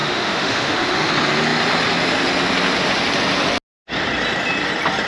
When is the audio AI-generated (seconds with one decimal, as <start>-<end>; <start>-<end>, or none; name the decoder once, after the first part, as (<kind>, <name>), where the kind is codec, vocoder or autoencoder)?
0.0-1.1 (autoencoder, DAC-VAE)